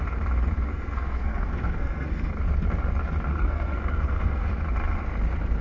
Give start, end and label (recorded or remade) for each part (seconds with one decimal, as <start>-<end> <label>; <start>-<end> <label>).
0.0-0.7 recorded; 0.7-2.3 remade; 2.3-3.3 recorded; 3.3-4.5 remade; 4.5-5.6 recorded